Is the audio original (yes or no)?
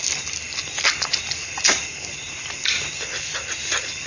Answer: yes